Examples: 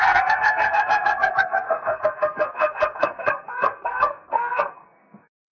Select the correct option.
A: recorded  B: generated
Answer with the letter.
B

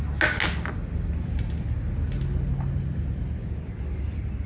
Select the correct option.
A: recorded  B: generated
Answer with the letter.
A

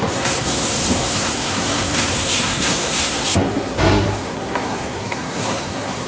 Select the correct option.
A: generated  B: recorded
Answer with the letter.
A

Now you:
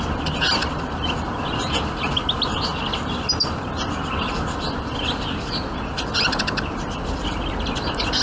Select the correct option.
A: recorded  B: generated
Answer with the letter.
A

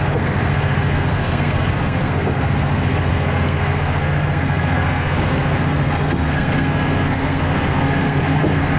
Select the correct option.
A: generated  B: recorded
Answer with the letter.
A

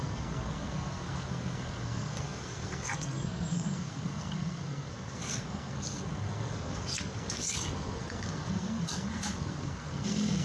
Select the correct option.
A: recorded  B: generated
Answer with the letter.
B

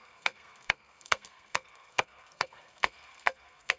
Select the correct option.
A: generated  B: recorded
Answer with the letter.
A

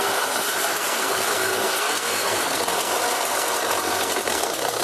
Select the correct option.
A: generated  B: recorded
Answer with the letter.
A